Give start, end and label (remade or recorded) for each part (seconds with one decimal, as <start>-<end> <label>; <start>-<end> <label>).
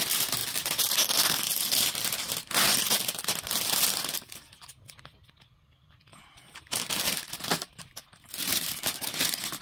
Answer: 0.0-6.1 recorded; 6.1-7.3 remade; 7.3-9.6 recorded